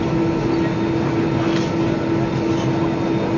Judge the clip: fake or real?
real